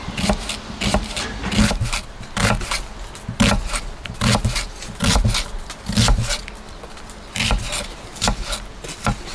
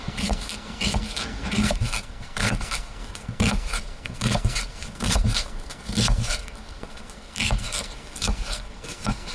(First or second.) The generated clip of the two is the second